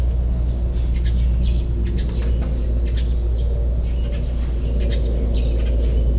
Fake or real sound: real